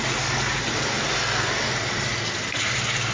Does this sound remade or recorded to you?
recorded